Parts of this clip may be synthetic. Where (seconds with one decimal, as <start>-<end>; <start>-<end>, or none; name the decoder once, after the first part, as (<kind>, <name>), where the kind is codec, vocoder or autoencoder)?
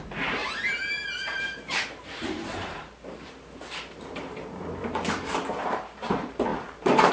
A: 0.0-7.1 (vocoder, BigVGAN v2)